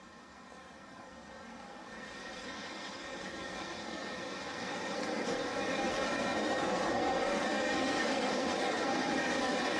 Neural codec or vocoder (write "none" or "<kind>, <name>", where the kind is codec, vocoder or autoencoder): codec, SNAC